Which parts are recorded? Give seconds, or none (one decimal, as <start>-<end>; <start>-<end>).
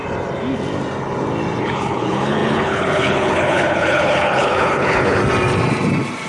0.0-1.6; 5.2-6.3